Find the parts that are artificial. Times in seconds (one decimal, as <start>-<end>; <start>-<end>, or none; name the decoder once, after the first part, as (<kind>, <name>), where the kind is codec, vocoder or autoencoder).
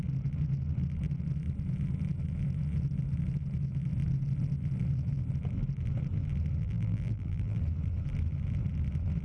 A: 6.6-7.6 (vocoder, BigVGAN v2)